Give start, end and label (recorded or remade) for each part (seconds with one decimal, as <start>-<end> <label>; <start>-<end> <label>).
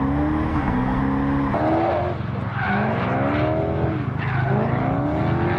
0.0-0.5 recorded; 0.5-1.0 remade; 1.0-5.6 recorded